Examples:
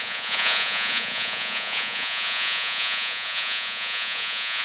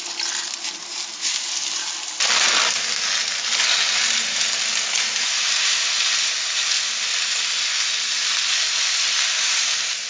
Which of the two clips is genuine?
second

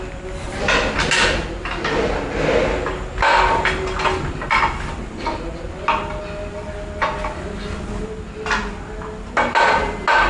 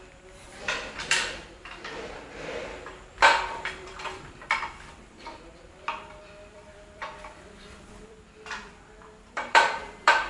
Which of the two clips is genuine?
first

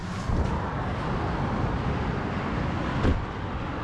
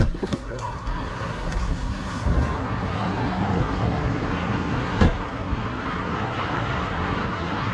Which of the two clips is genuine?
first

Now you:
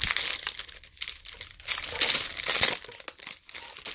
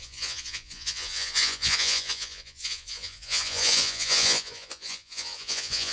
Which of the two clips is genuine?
first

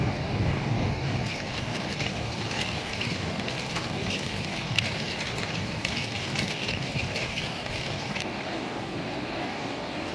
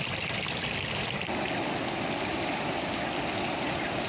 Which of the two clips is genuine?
second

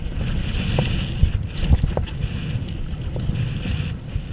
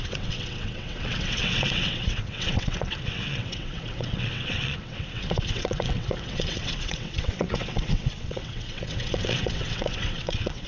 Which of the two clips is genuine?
first